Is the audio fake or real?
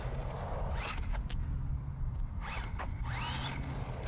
real